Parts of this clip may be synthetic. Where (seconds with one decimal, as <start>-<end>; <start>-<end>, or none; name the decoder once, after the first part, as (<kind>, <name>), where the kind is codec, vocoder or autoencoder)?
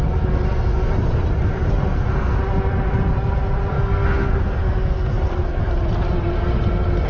1.9-2.4 (codec, SNAC); 3.7-5.6